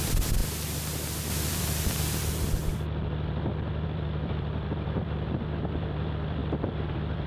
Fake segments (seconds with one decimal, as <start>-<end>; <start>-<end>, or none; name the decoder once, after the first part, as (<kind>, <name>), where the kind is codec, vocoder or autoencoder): 0.0-0.4 (vocoder, BigVGAN v2); 1.3-7.3